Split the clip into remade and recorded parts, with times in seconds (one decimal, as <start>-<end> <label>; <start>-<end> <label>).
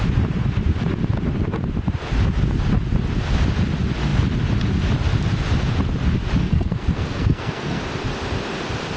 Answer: 0.0-6.4 recorded; 6.4-7.8 remade; 7.8-9.0 recorded